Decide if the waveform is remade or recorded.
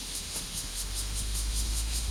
remade